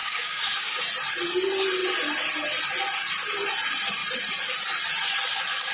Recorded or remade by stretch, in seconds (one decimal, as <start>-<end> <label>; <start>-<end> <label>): 0.0-0.8 remade; 0.8-5.7 recorded